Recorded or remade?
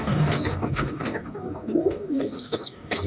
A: remade